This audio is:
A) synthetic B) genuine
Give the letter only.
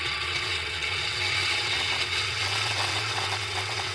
A